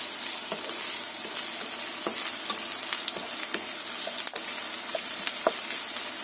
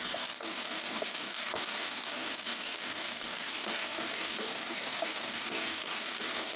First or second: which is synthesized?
second